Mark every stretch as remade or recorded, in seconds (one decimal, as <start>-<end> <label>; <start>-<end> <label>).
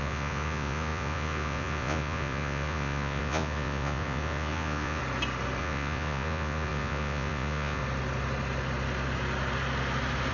0.0-5.0 remade; 5.0-5.6 recorded; 5.6-7.8 remade; 7.8-10.3 recorded